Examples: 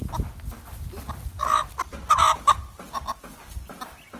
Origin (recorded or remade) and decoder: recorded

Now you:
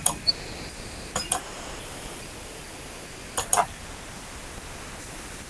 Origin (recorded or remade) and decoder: recorded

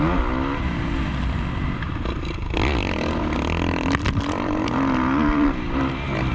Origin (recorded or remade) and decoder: recorded